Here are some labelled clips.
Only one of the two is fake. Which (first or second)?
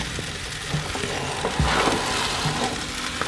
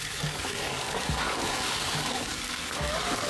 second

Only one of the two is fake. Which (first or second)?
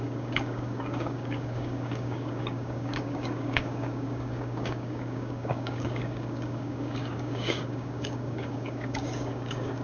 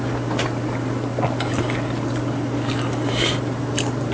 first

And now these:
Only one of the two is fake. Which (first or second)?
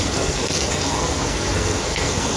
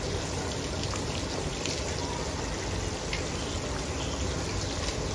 first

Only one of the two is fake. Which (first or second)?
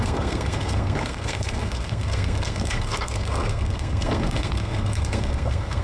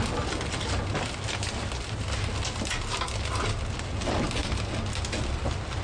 first